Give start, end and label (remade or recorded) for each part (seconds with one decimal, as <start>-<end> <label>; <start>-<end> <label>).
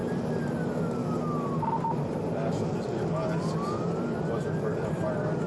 0.0-5.5 recorded